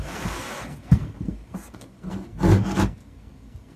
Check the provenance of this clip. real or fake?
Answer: fake